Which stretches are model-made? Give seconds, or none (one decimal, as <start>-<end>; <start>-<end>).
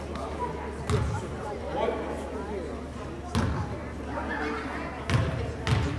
none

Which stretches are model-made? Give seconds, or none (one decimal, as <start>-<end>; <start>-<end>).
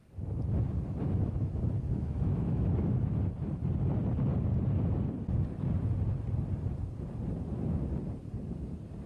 1.0-3.1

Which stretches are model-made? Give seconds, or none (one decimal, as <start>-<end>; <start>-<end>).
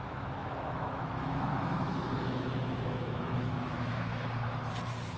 0.0-4.1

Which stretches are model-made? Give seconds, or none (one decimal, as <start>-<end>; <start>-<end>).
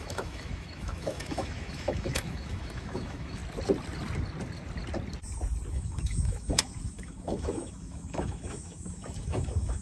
0.0-3.4; 5.7-9.8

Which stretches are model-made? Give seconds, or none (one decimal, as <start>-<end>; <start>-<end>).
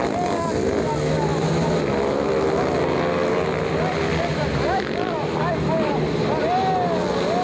none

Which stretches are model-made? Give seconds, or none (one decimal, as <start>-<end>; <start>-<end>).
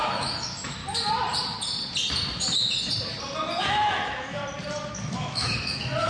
0.0-0.8; 3.6-4.4; 5.0-6.1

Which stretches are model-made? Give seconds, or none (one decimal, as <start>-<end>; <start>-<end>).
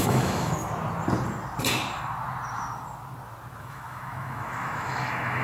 0.0-0.6; 3.6-5.4